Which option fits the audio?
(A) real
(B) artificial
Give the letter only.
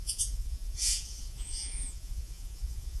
B